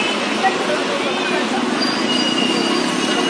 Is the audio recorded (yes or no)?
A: yes